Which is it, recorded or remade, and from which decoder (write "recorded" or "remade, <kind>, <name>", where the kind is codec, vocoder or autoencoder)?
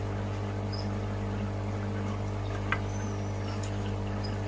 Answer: recorded